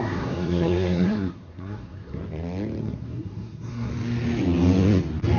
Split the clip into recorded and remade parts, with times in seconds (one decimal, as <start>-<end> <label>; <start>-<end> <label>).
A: 0.0-2.2 remade; 2.2-2.8 recorded; 2.8-3.9 remade; 3.9-5.4 recorded